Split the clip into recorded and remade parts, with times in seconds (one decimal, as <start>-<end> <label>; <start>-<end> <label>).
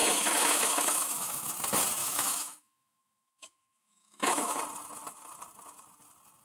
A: 0.0-1.5 remade; 1.5-2.0 recorded; 2.0-4.6 remade; 4.6-6.4 recorded